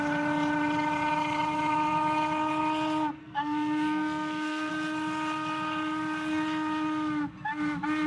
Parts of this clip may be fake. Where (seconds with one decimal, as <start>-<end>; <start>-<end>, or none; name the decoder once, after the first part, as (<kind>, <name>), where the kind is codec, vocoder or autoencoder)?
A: 3.2-4.7 (codec, SNAC)

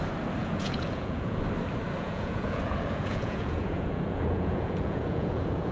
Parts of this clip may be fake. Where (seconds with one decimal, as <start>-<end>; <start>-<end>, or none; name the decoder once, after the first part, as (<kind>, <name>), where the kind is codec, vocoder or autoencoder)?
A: 0.4-1.4 (vocoder, Vocos); 2.0-5.7

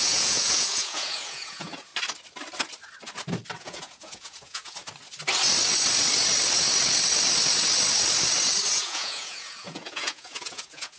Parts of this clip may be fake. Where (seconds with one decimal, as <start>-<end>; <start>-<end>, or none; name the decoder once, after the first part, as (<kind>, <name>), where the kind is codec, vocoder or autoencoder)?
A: 0.0-1.9 (vocoder, Vocos); 3.6-4.8; 8.7-11.0

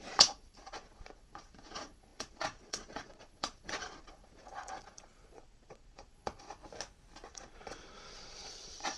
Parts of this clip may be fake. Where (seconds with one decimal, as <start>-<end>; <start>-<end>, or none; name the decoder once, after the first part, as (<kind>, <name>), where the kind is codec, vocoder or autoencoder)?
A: 0.0-6.6 (vocoder, Vocos); 7.3-9.0

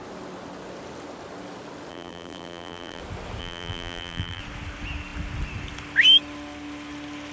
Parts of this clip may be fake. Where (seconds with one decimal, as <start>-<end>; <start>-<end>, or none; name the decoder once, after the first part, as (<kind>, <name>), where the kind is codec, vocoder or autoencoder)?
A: 1.9-3.0 (vocoder, BigVGAN v2); 3.4-4.4